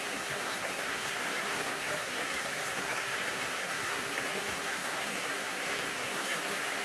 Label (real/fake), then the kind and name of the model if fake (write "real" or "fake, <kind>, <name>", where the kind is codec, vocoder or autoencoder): fake, codec, SNAC